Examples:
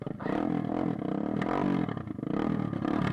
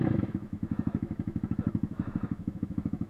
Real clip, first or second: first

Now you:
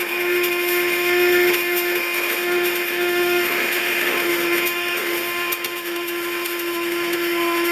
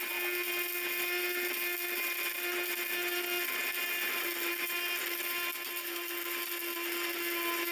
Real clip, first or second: second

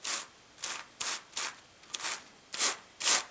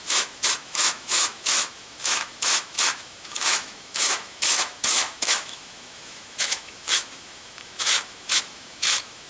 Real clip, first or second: first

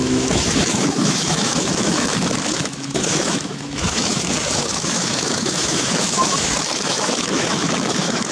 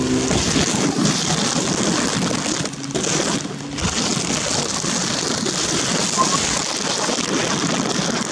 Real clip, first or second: second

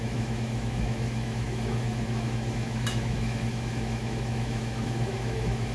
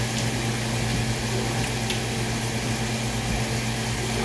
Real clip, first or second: second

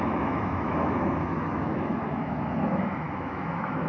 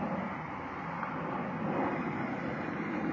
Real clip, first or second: second